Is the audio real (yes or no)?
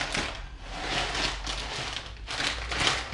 yes